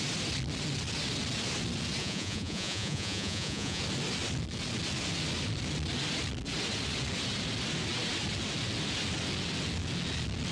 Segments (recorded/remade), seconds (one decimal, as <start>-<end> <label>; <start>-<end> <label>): 0.0-2.0 recorded; 2.0-3.8 remade; 3.8-10.5 recorded

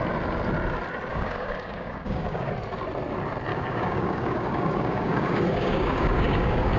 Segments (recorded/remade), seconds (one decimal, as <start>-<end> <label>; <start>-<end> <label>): 0.0-1.1 recorded; 1.1-2.5 remade; 2.5-3.5 recorded; 3.5-6.8 remade

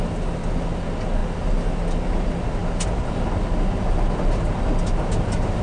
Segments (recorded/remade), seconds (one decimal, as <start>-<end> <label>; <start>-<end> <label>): 0.0-5.6 recorded